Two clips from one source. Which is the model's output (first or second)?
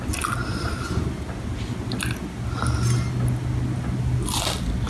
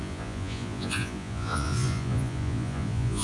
second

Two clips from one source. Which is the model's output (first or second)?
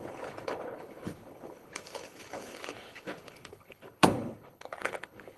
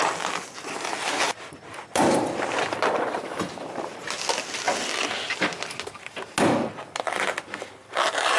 first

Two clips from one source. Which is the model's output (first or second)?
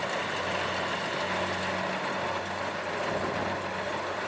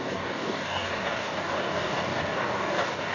second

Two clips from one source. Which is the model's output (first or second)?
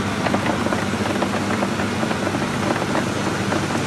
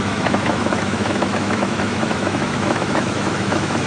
second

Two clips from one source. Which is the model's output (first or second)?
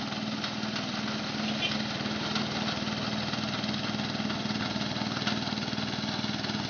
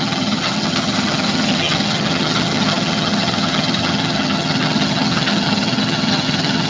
second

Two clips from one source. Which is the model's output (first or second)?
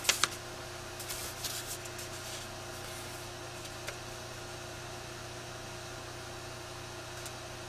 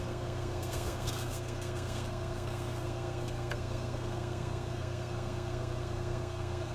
second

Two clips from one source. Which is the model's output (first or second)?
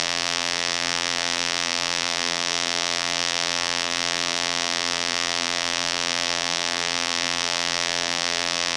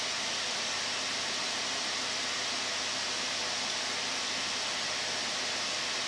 first